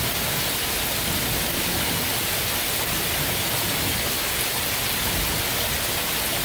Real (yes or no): yes